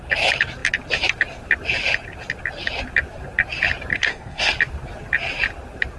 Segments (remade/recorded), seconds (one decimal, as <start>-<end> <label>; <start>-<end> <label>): 0.0-3.9 recorded; 3.9-4.5 remade; 4.5-6.0 recorded